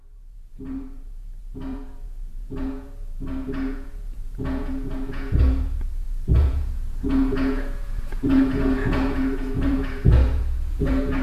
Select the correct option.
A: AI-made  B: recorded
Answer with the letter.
A